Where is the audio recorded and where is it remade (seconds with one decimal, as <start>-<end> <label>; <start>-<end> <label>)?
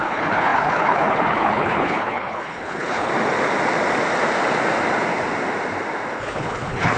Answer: 0.0-3.1 remade; 3.1-6.2 recorded; 6.2-7.0 remade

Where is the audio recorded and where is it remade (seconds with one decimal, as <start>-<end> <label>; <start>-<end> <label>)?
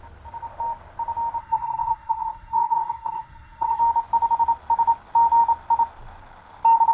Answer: 0.0-1.4 recorded; 1.4-3.8 remade; 3.8-6.9 recorded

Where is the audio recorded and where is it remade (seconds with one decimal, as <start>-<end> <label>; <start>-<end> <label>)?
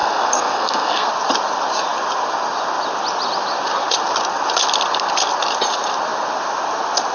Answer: 0.0-1.1 remade; 1.1-7.1 recorded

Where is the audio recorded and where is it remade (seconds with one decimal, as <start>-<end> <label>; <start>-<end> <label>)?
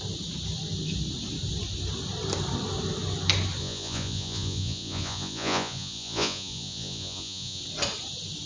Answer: 0.0-3.6 recorded; 3.6-7.6 remade; 7.6-8.5 recorded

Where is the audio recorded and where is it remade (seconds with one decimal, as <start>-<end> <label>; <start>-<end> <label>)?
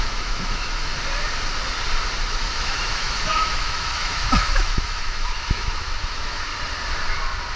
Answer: 0.0-0.9 remade; 0.9-2.3 recorded; 2.3-6.5 remade; 6.5-7.6 recorded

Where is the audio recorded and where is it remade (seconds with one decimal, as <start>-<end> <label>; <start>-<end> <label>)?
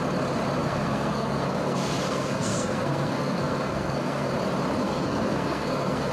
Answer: 0.0-0.6 recorded; 0.6-4.3 remade; 4.3-4.8 recorded; 4.8-6.1 remade